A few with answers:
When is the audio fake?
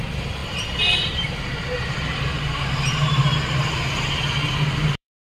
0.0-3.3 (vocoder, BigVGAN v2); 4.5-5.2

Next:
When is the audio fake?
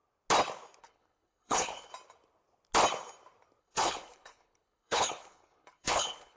0.8-1.9 (codec, HILCodec); 3.6-6.4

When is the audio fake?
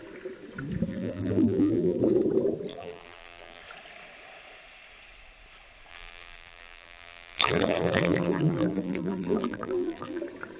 0.9-2.0 (vocoder, BigVGAN v2); 2.7-3.6; 5.9-10.2